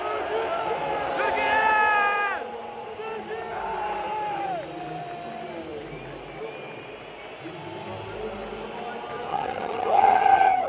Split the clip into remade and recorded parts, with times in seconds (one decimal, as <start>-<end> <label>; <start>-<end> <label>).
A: 0.0-9.3 recorded; 9.3-10.7 remade

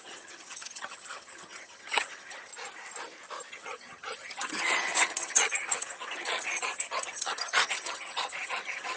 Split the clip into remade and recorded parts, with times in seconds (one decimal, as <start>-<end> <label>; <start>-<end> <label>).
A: 0.0-2.5 remade; 2.5-3.5 recorded; 3.5-9.0 remade

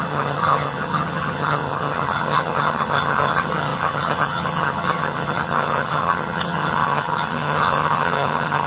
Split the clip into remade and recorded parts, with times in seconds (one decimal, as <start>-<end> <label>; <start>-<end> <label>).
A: 0.0-8.7 remade